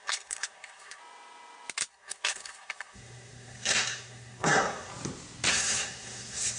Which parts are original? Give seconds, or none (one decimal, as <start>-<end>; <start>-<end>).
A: 1.0-1.9; 4.9-5.5